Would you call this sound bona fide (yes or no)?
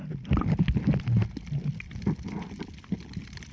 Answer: yes